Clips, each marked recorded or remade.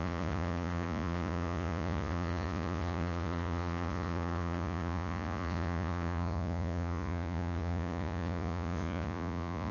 remade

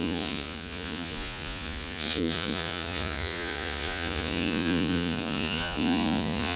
remade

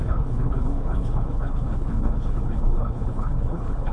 remade